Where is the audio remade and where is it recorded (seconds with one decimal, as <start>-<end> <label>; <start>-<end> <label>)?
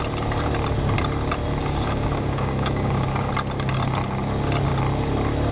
0.0-1.6 recorded; 1.6-3.3 remade; 3.3-5.5 recorded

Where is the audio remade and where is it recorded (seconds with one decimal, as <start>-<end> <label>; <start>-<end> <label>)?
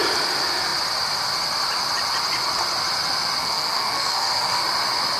0.0-3.4 recorded; 3.4-4.6 remade; 4.6-5.2 recorded